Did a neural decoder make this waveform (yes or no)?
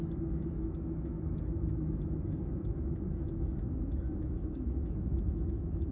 yes